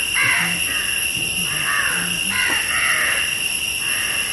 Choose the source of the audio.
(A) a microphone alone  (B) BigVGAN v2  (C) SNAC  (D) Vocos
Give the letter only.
A